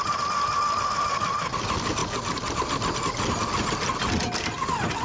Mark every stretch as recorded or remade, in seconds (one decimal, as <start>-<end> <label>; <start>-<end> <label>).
0.0-5.0 recorded